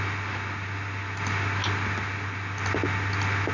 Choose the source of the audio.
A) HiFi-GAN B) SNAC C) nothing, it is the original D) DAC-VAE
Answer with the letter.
C